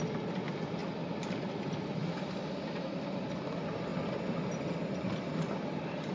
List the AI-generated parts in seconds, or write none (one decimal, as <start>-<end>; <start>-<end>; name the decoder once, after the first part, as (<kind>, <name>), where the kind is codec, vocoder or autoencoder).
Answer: 0.8-2.8 (vocoder, BigVGAN v2)